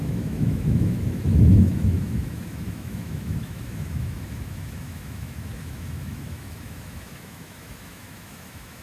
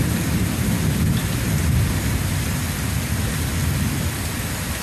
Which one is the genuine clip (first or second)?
second